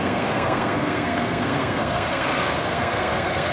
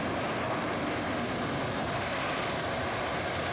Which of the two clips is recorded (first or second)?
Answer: second